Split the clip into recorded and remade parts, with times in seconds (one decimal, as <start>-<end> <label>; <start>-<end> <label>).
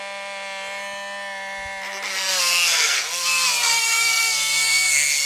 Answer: 0.0-2.1 recorded; 2.1-5.3 remade